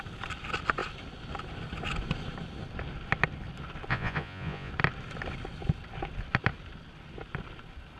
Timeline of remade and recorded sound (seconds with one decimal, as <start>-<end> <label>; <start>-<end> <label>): 0.0-3.9 recorded; 3.9-4.7 remade; 4.7-8.0 recorded